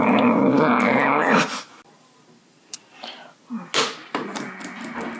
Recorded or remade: recorded